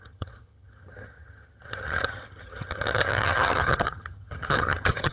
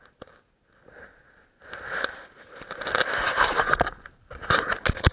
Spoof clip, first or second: first